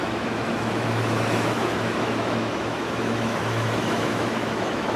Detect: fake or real fake